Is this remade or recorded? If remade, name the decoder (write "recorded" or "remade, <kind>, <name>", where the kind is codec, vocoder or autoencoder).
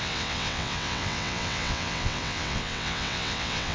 remade, vocoder, WaveNeXt